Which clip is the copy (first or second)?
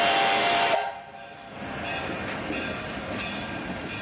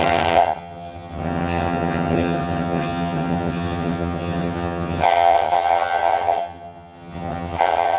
second